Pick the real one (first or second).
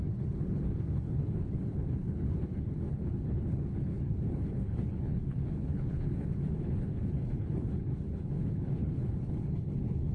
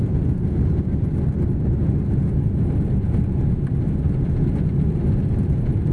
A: second